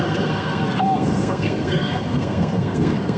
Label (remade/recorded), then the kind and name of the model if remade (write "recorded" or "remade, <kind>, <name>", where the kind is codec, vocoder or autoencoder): remade, codec, SNAC